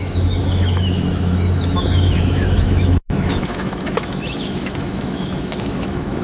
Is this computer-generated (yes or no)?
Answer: yes